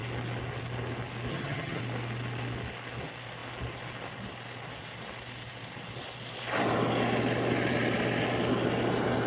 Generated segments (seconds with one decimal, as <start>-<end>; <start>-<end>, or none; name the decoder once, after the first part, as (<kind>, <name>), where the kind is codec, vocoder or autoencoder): 1.3-1.8 (vocoder, HiFi-GAN)